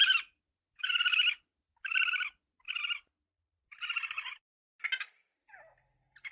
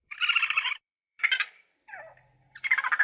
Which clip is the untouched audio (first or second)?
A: first